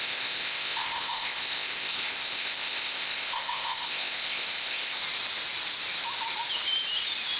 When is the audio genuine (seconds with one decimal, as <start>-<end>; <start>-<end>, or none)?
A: 5.0-7.4